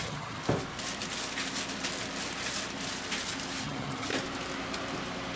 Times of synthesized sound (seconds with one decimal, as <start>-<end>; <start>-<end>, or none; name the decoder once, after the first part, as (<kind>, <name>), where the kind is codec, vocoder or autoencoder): 0.0-0.4 (vocoder, HiFi-GAN); 3.6-4.1